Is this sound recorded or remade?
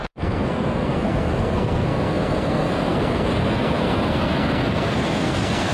remade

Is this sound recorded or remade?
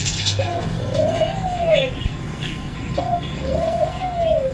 remade